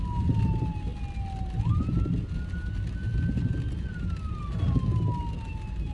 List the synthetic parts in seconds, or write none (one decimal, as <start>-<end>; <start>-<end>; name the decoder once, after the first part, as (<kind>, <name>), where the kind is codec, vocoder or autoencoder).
none